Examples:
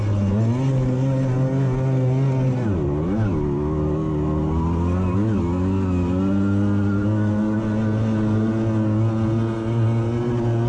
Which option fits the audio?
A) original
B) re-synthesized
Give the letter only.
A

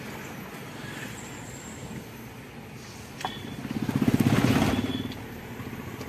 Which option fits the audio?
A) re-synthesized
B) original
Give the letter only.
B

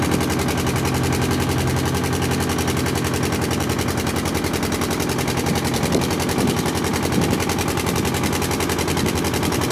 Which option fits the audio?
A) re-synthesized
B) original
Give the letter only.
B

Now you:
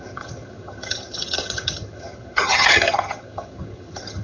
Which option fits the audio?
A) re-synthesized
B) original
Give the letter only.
A